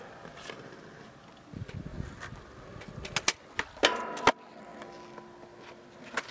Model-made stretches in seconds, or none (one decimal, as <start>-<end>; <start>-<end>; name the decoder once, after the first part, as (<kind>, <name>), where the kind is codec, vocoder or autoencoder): none